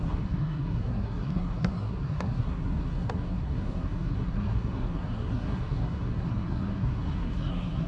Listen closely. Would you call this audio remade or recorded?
remade